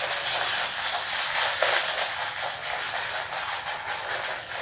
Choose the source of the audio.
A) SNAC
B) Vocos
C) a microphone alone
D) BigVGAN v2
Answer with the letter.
C